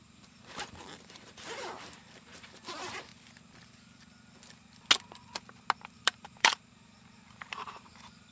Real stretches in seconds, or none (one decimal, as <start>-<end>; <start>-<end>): 3.1-6.0